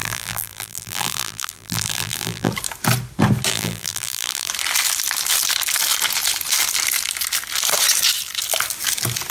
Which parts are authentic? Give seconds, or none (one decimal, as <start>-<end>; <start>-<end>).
2.5-3.5; 4.5-9.3